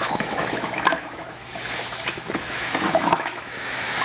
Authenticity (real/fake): fake